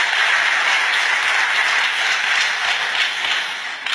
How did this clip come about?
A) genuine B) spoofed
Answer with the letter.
A